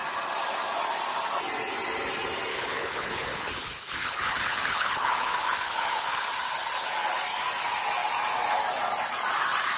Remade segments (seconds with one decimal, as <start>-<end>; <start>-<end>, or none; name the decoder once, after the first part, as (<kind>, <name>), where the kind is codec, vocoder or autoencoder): 2.5-6.3 (codec, HILCodec)